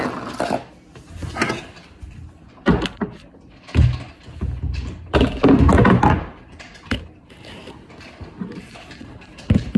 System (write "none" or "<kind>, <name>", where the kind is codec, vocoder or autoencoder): none